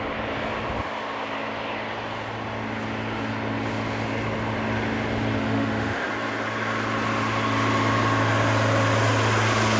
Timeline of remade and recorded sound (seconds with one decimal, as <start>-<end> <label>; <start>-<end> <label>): 0.0-5.4 recorded; 5.4-6.1 remade; 6.1-9.8 recorded